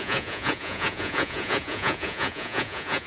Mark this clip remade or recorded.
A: remade